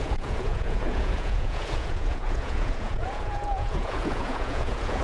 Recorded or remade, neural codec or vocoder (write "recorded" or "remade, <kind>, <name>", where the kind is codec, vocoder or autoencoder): remade, vocoder, Vocos